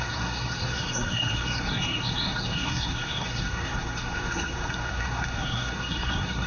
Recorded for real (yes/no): no